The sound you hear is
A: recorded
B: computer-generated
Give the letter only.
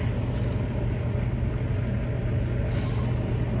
A